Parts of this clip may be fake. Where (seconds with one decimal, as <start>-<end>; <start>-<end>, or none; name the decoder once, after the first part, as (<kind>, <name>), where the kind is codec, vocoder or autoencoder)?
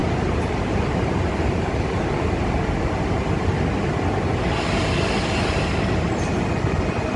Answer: 0.0-2.4 (vocoder, BigVGAN v2)